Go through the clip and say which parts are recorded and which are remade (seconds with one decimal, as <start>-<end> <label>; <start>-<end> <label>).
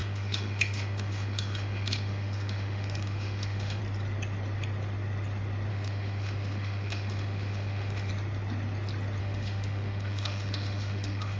0.0-3.8 remade; 3.8-5.7 recorded; 5.7-8.1 remade; 8.1-9.2 recorded; 9.2-11.4 remade